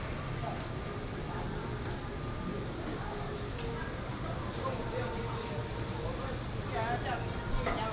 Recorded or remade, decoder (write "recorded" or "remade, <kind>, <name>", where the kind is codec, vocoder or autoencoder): recorded